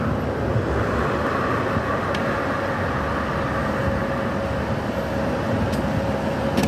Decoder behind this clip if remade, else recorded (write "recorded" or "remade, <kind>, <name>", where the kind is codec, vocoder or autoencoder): recorded